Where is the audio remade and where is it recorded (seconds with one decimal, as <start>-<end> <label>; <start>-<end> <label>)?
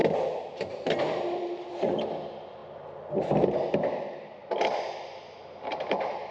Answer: 0.0-6.3 recorded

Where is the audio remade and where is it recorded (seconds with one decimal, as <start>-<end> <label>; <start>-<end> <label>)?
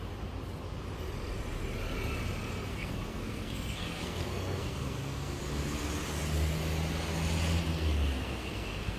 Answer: 0.0-2.7 recorded; 2.7-5.4 remade; 5.4-7.7 recorded; 7.7-9.0 remade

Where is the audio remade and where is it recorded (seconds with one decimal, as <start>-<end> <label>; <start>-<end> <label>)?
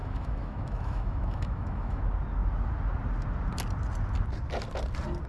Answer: 0.0-2.0 remade; 2.0-5.3 recorded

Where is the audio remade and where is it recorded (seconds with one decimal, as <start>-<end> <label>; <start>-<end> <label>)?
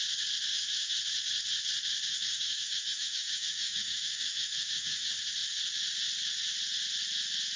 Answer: 0.0-0.5 recorded; 0.5-1.0 remade; 1.0-2.1 recorded; 2.1-5.0 remade; 5.0-7.6 recorded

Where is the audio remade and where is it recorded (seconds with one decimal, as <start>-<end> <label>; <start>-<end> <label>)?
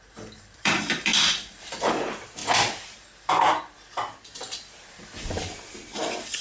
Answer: 0.0-1.1 remade; 1.1-1.6 recorded; 1.6-2.4 remade; 2.4-6.4 recorded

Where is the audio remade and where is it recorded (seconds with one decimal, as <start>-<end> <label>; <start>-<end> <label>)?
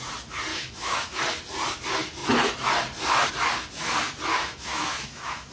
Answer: 0.0-0.5 recorded; 0.5-1.2 remade; 1.2-4.3 recorded; 4.3-5.5 remade